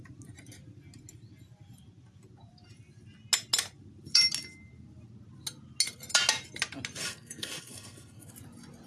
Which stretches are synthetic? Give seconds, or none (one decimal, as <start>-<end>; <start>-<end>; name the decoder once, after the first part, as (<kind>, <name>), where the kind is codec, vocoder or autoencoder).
7.0-8.3 (codec, SNAC)

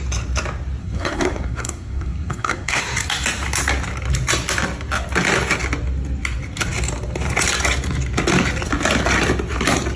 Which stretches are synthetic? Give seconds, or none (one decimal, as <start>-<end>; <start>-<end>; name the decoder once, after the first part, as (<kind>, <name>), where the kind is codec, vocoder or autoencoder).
0.8-2.8 (codec, SNAC)